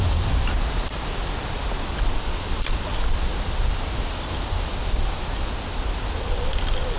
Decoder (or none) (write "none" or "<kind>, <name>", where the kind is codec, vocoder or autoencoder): none